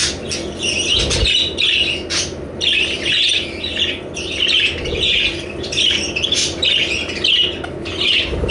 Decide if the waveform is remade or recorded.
recorded